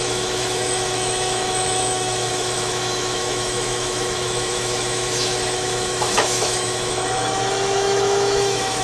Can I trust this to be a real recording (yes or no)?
no